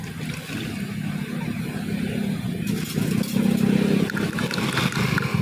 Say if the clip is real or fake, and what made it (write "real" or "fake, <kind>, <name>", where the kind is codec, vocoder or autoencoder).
real